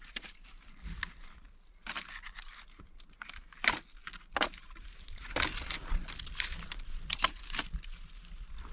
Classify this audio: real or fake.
real